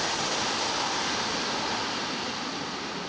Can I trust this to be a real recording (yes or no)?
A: yes